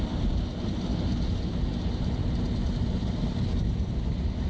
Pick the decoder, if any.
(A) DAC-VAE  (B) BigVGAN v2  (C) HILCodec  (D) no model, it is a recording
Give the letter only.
D